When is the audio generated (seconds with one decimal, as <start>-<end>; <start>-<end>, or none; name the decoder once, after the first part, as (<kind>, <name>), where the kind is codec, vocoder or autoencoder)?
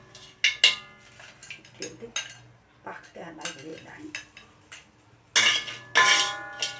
none